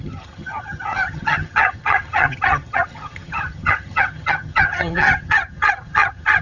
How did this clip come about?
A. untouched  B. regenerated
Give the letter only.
B